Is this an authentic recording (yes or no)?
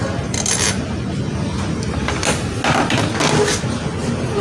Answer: yes